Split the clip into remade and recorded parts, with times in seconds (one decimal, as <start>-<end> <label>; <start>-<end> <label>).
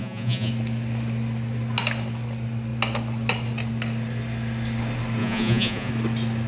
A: 0.0-0.5 remade; 0.5-5.2 recorded; 5.2-5.9 remade; 5.9-6.5 recorded